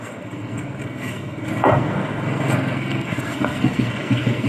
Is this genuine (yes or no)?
no